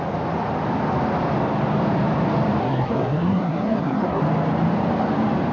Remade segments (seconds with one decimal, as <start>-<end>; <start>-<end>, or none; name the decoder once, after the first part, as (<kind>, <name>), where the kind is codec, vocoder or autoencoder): 2.6-4.2 (codec, SNAC)